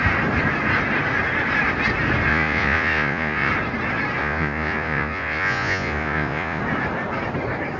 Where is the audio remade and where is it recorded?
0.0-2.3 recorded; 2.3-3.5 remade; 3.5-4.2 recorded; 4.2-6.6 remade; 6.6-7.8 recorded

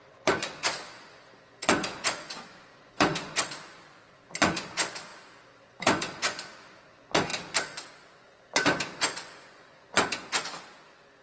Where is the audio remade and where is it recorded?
0.0-7.3 remade; 7.3-7.9 recorded; 7.9-11.2 remade